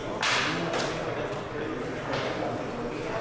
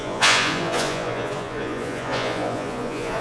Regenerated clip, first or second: second